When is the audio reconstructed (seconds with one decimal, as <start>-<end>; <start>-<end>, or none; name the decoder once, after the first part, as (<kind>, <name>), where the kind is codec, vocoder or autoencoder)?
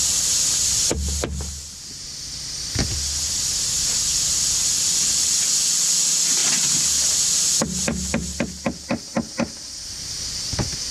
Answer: none